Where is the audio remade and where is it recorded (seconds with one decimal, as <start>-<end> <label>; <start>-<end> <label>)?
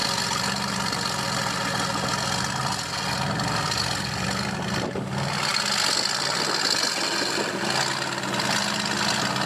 0.0-9.5 recorded